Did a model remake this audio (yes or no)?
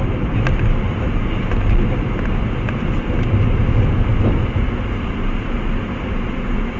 no